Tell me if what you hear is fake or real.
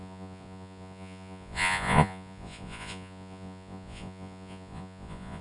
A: fake